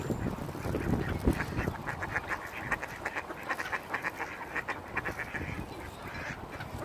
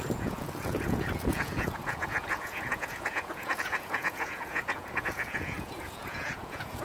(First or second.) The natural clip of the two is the first